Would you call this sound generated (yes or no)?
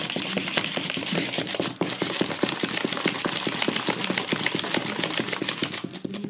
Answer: no